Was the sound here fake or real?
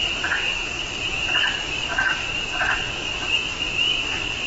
fake